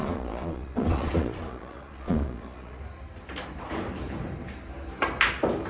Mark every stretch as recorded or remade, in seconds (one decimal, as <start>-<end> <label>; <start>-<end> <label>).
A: 0.0-2.8 remade; 2.8-5.7 recorded